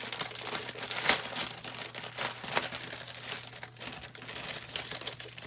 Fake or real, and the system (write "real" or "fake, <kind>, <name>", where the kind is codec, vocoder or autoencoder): real